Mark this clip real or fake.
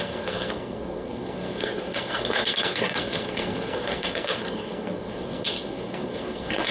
fake